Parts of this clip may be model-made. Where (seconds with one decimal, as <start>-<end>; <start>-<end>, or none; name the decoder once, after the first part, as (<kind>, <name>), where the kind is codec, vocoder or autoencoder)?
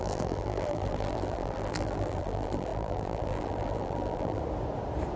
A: 0.0-4.4 (vocoder, BigVGAN v2)